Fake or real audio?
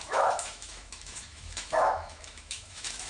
fake